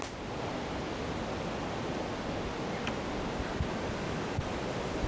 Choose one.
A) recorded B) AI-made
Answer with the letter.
A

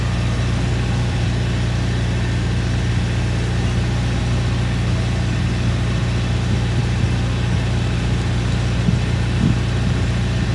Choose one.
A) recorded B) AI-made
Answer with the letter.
A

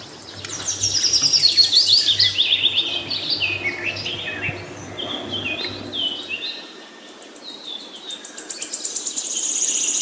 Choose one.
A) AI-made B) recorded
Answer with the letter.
B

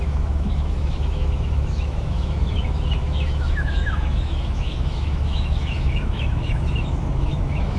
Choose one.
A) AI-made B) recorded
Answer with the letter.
A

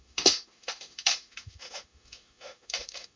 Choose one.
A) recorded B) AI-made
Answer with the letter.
B